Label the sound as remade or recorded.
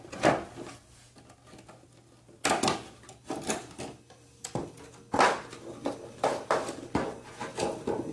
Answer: recorded